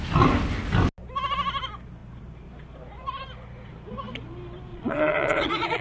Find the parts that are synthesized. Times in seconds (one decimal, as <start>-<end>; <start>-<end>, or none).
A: 4.7-5.8